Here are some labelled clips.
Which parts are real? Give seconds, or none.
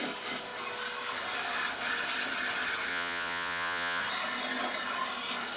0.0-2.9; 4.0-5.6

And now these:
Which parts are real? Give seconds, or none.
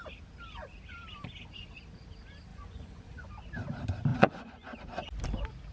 0.0-2.5; 3.3-4.1; 4.8-5.7